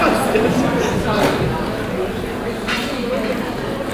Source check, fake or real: real